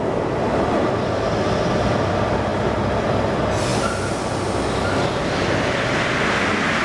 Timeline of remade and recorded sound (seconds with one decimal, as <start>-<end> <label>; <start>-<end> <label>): 0.0-6.8 recorded